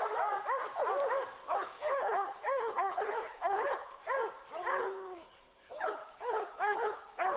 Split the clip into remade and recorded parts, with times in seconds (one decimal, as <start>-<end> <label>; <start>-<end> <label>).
0.0-1.4 recorded; 1.4-4.0 remade; 4.0-4.7 recorded; 4.7-7.4 remade